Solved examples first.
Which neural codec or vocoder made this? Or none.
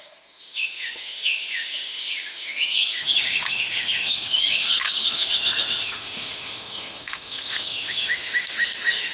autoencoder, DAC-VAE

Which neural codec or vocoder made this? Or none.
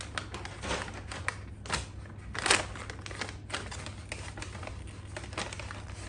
none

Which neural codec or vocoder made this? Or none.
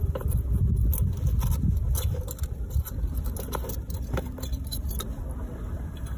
none